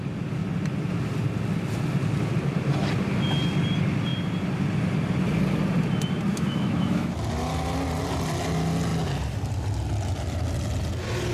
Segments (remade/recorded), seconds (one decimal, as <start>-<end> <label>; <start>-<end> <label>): 0.0-6.3 recorded; 6.3-7.1 remade; 7.1-11.3 recorded